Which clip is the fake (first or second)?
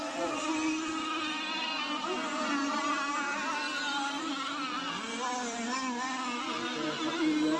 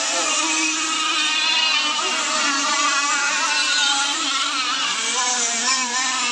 second